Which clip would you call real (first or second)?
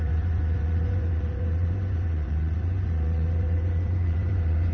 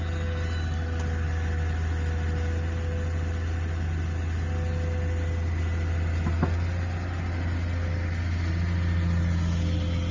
second